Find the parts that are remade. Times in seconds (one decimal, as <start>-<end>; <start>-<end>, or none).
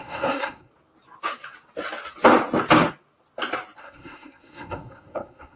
0.0-0.7; 3.8-5.6